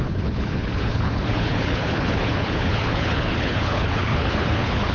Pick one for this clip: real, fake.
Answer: fake